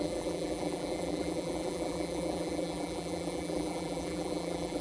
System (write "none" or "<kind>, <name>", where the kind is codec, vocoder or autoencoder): vocoder, BigVGAN v2